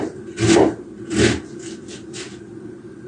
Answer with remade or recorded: recorded